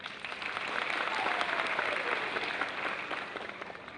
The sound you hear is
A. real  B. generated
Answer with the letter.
A